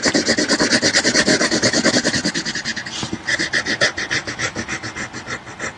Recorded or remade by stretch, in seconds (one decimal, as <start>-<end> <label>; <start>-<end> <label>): 0.0-1.3 recorded; 1.3-1.9 remade; 1.9-4.2 recorded; 4.2-4.8 remade; 4.8-5.8 recorded